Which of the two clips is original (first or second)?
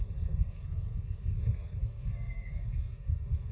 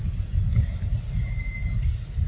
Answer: second